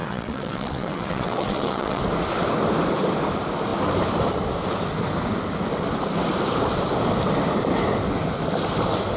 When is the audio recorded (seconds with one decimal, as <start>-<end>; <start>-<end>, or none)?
2.0-9.2